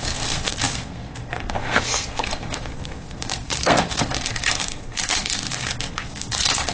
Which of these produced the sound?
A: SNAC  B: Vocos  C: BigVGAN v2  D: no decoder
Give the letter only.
A